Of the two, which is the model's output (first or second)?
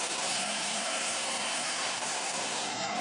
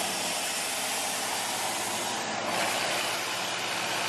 first